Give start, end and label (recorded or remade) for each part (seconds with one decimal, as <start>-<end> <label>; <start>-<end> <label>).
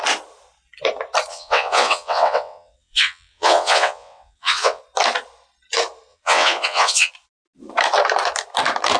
0.0-1.3 recorded; 1.3-4.8 remade; 4.8-6.1 recorded; 6.1-7.1 remade; 7.1-9.0 recorded